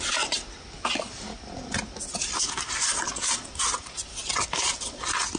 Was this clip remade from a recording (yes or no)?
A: no